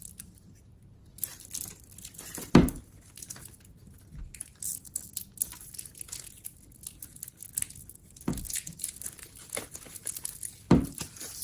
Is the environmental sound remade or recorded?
recorded